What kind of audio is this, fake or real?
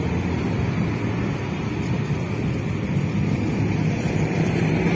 real